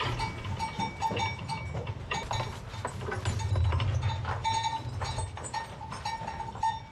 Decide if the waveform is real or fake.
real